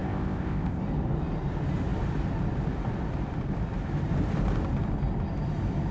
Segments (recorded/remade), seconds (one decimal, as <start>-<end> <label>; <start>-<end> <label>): 0.0-0.8 remade; 0.8-5.9 recorded